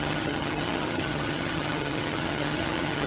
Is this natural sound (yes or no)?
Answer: no